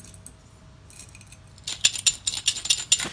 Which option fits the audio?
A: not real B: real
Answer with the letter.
B